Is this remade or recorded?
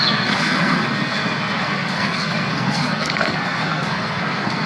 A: remade